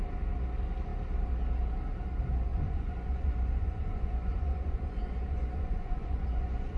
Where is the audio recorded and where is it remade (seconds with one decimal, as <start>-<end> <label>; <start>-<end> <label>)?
0.0-2.5 recorded; 2.5-6.8 remade